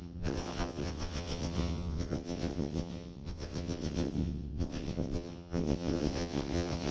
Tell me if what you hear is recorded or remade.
remade